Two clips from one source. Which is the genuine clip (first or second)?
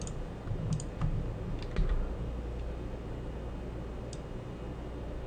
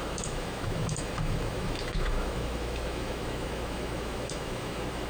first